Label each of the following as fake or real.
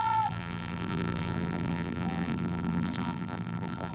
fake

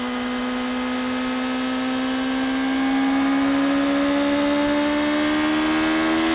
real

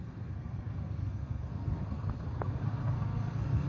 fake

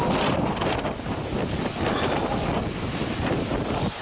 real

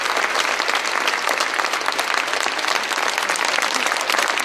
real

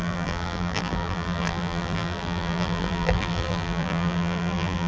fake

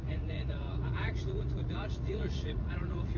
fake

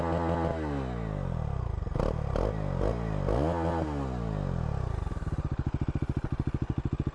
real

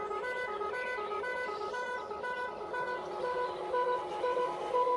real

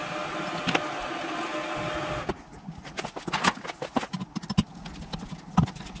real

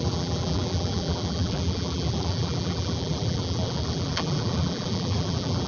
fake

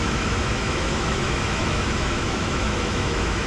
fake